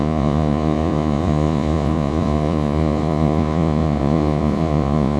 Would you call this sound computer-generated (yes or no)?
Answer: yes